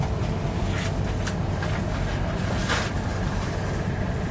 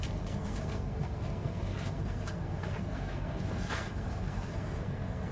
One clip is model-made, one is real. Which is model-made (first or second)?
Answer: second